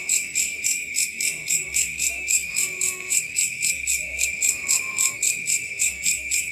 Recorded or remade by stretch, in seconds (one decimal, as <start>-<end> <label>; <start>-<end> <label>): 0.0-6.5 remade